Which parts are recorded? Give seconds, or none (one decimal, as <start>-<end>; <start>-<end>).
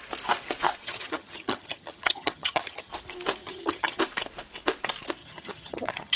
0.0-0.8; 2.9-3.4; 4.0-5.2